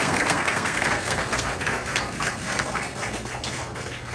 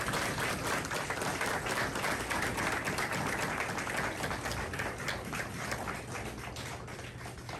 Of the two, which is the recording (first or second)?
second